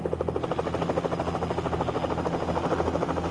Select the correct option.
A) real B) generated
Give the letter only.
A